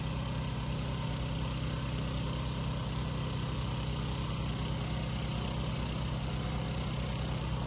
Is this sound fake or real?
real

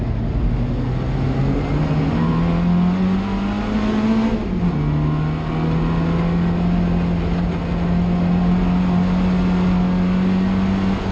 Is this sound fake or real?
real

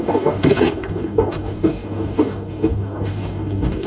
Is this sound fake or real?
fake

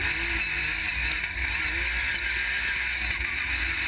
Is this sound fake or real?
real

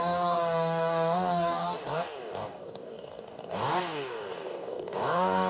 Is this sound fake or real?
fake